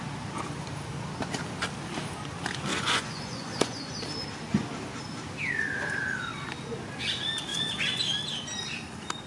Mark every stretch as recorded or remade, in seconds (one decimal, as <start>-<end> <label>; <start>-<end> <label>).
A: 0.0-2.7 recorded; 2.7-3.9 remade; 3.9-7.5 recorded; 7.5-8.0 remade; 8.0-9.3 recorded